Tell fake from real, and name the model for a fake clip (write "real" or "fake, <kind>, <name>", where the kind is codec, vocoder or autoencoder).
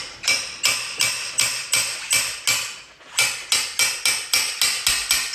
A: real